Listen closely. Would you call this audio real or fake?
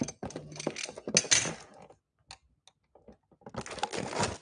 real